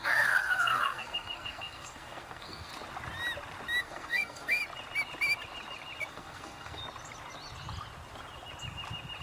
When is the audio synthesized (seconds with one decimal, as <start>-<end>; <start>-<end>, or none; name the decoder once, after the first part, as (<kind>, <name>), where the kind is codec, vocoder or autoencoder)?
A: 0.0-2.7 (codec, SNAC); 3.8-4.6; 6.1-6.8